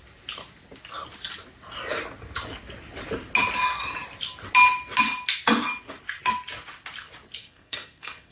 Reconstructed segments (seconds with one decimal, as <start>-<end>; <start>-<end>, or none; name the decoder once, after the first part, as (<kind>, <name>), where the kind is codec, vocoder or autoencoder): 7.4-8.3 (codec, SNAC)